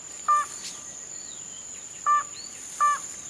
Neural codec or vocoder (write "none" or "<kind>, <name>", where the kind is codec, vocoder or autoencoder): none